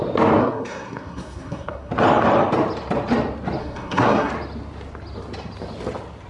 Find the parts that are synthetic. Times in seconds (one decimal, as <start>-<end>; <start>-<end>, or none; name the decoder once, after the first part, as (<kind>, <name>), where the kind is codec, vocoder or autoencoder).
0.4-1.9 (codec, SNAC); 3.6-4.3

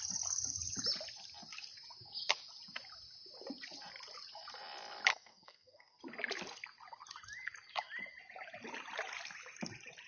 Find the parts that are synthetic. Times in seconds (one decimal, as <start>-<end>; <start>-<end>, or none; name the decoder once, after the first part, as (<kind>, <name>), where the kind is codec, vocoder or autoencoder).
5.1-6.0 (codec, SNAC)

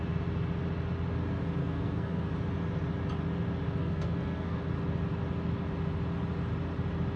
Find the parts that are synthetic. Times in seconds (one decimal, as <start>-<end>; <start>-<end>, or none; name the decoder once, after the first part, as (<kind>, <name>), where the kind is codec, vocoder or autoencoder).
1.6-2.3 (codec, SNAC); 3.8-4.6

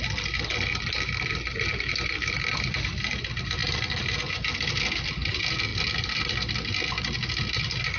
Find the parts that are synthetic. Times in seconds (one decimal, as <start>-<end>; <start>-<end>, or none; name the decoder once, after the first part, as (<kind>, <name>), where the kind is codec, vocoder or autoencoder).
none

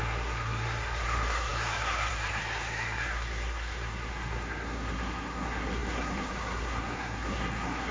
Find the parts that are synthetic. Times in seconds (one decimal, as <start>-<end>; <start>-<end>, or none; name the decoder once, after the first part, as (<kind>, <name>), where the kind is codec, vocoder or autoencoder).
0.0-7.9 (codec, SNAC)

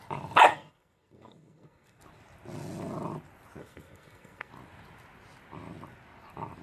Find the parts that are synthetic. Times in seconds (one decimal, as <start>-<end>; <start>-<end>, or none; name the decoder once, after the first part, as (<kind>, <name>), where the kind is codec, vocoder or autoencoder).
0.5-2.0 (codec, SNAC); 3.6-4.5

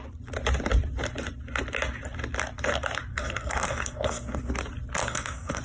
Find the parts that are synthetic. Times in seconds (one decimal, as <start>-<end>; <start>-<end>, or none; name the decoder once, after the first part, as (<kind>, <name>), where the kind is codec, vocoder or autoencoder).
3.1-4.5 (codec, SNAC); 5.0-5.6

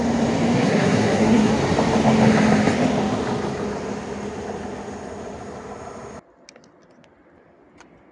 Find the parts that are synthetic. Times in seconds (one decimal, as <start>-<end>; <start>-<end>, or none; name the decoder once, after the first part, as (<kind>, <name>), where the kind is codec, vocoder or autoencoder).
0.5-1.5 (codec, SNAC)